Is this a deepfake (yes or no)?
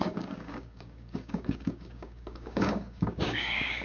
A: yes